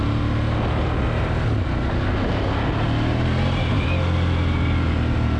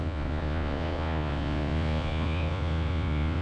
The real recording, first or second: first